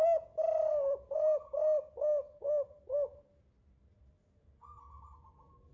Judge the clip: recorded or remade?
recorded